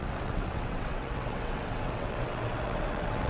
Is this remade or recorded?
remade